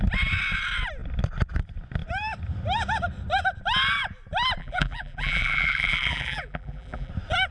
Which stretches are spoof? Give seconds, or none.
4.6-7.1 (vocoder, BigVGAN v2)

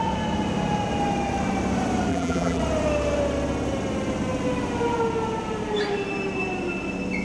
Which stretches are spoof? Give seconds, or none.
2.1-2.6 (vocoder, BigVGAN v2)

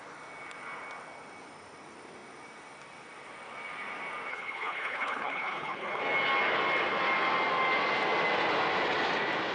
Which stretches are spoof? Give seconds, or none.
4.3-6.0 (codec, HILCodec)

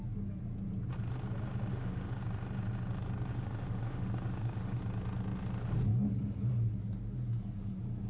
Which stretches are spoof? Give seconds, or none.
1.7-2.2 (autoencoder, DAC-VAE); 3.3-4.8

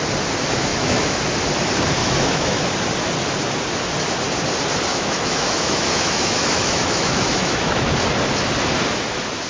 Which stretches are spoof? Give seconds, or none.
0.7-1.2 (autoencoder, DAC-VAE); 2.0-2.7; 4.9-7.9

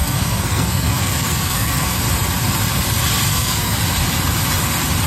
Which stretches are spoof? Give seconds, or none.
0.0-2.0 (codec, SNAC); 3.3-3.8

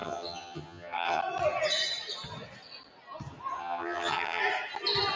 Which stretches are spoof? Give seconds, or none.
0.0-1.2 (vocoder, HiFi-GAN); 3.6-4.4

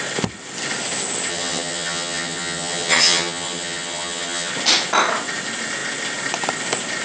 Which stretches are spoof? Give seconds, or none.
1.3-4.5 (vocoder, HiFi-GAN)